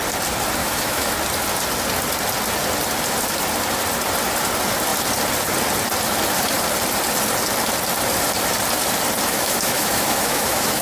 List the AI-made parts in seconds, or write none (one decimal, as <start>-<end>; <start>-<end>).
0.6-1.1; 9.3-10.8

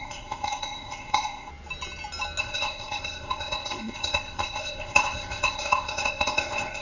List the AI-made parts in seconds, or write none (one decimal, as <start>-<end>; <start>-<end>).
0.0-1.5; 2.4-6.8

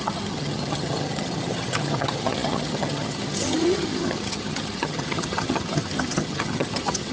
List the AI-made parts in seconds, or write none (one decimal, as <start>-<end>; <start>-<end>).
0.0-7.1